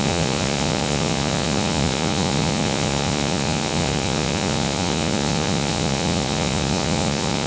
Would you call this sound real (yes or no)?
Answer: no